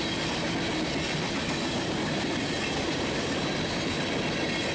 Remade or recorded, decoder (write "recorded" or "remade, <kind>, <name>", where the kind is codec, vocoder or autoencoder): recorded